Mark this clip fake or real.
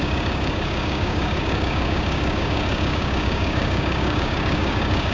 fake